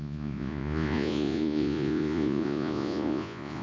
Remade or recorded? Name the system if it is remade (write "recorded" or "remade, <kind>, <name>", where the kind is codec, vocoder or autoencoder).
remade, vocoder, Vocos